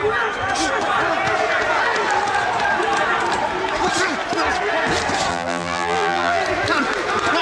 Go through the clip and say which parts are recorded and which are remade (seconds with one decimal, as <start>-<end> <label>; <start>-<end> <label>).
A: 0.0-5.3 recorded; 5.3-6.4 remade; 6.4-7.4 recorded